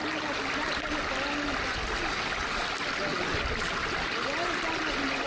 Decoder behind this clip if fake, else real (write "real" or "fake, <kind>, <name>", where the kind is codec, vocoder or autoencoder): real